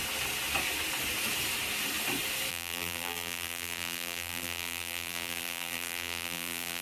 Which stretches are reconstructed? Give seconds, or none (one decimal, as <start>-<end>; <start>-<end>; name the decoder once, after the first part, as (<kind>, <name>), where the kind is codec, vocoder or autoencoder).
2.5-6.8 (vocoder, BigVGAN v2)